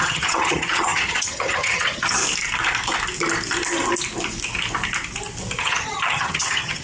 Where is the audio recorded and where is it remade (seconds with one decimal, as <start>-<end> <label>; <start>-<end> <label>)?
0.0-2.2 remade; 2.2-5.6 recorded; 5.6-6.8 remade